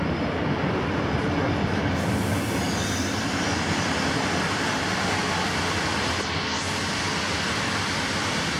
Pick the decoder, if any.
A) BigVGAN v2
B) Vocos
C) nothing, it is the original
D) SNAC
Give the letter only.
C